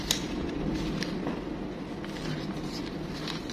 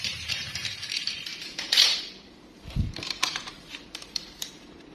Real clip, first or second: first